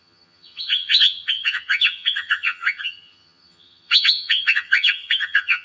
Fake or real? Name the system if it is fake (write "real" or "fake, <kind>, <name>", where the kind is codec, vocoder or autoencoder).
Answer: fake, vocoder, HiFi-GAN